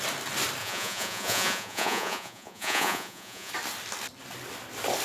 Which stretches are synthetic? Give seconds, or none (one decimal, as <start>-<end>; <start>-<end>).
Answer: 0.6-3.5